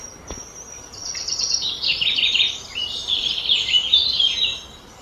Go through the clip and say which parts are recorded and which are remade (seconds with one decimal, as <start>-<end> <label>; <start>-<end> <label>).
0.0-5.0 recorded